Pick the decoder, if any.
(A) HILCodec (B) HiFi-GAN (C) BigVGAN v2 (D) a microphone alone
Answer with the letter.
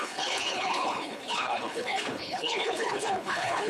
A